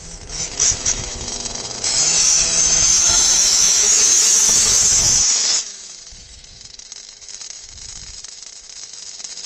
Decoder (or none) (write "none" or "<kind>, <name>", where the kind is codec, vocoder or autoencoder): autoencoder, DAC-VAE